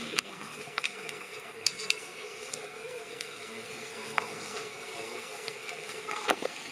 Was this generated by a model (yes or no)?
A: yes